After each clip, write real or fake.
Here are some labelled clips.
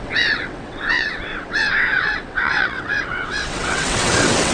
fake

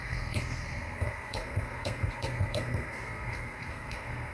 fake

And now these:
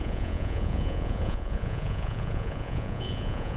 fake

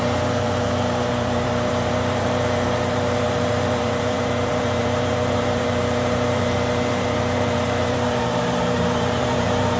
fake